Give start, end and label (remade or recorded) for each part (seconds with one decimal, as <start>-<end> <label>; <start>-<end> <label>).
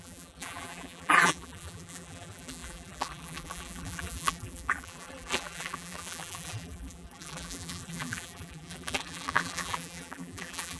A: 0.0-10.8 remade